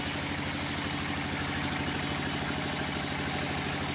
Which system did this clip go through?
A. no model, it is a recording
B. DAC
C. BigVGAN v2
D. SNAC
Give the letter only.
A